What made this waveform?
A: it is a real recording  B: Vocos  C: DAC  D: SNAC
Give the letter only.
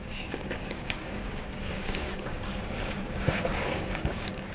C